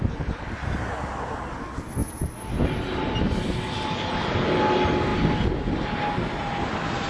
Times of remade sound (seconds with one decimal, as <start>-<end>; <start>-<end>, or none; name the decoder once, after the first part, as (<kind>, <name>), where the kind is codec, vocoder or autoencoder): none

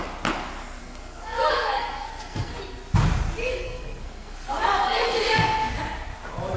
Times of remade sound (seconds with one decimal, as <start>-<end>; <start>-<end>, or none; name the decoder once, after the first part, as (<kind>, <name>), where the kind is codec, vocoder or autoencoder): 0.8-2.5 (codec, SNAC); 3.4-5.4

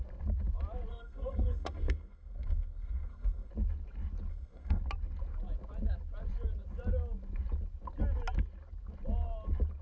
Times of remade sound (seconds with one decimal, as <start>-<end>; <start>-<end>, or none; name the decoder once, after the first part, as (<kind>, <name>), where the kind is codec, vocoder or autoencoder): 0.9-3.5 (codec, SNAC); 4.3-4.8